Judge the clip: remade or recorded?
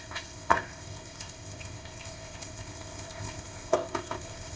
remade